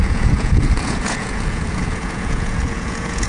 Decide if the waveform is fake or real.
fake